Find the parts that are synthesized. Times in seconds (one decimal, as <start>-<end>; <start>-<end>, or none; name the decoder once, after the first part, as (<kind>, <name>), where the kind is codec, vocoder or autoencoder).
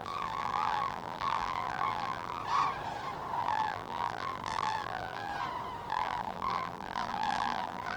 0.0-2.4 (vocoder, BigVGAN v2); 3.4-5.3; 5.9-8.0